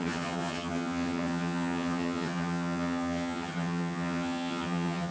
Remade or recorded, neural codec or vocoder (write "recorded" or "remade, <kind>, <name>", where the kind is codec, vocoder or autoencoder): remade, vocoder, HiFi-GAN